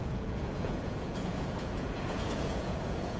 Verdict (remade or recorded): remade